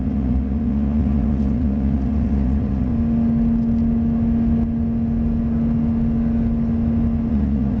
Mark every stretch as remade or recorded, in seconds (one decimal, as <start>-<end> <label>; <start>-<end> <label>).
0.0-2.9 remade; 2.9-7.3 recorded; 7.3-7.8 remade

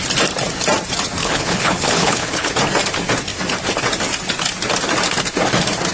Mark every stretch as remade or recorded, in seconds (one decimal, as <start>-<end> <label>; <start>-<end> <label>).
0.0-1.2 recorded; 1.2-2.5 remade; 2.5-5.9 recorded

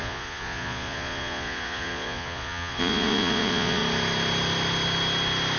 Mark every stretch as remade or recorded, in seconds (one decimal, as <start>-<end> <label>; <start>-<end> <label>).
0.0-3.8 remade; 3.8-5.6 recorded

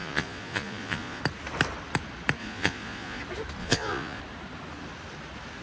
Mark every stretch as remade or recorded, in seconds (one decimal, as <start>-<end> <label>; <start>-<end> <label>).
0.0-1.2 remade; 1.2-2.4 recorded; 2.4-3.2 remade; 3.2-3.6 recorded; 3.6-4.2 remade; 4.2-5.6 recorded